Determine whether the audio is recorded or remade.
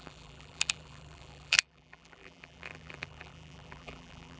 remade